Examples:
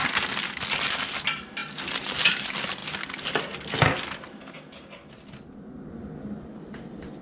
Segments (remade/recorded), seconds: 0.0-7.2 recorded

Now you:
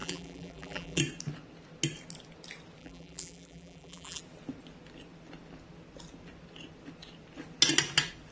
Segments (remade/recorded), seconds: 0.0-1.0 remade; 1.0-2.8 recorded; 2.8-4.2 remade; 4.2-8.3 recorded

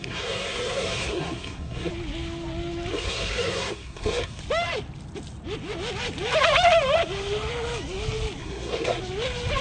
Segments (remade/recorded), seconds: 0.0-1.9 remade; 1.9-2.9 recorded; 2.9-4.4 remade; 4.4-8.4 recorded; 8.4-9.0 remade; 9.0-9.6 recorded

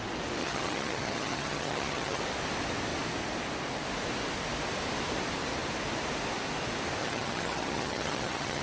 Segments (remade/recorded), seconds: 0.0-0.4 recorded; 0.4-2.2 remade; 2.2-7.0 recorded; 7.0-8.6 remade

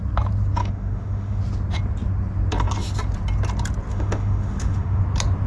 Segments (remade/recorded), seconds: 0.0-0.6 recorded; 0.6-1.4 remade; 1.4-3.9 recorded; 3.9-5.0 remade; 5.0-5.5 recorded

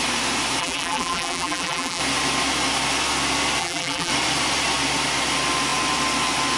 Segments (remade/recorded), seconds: 0.0-0.6 recorded; 0.6-2.0 remade; 2.0-3.6 recorded; 3.6-4.1 remade; 4.1-6.6 recorded

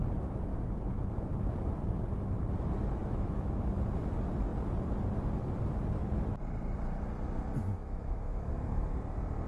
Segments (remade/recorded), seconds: 0.0-0.5 recorded; 0.5-1.1 remade; 1.1-3.0 recorded; 3.0-3.8 remade; 3.8-7.6 recorded; 7.6-8.5 remade; 8.5-9.5 recorded